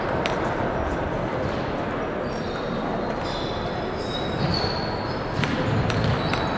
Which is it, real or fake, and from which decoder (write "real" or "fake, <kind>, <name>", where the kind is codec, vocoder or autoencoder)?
real